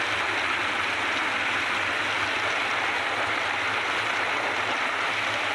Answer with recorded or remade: recorded